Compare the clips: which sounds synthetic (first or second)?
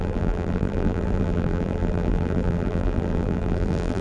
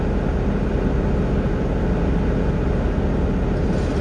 first